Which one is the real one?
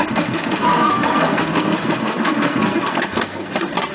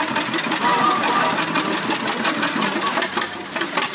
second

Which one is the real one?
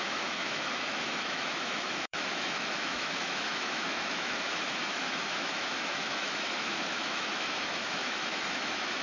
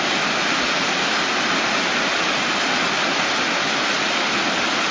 second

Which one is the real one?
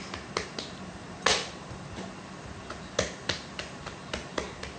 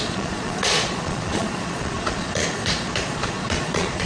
first